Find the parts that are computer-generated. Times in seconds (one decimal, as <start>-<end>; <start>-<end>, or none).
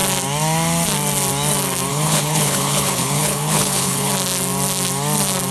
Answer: 1.9-4.1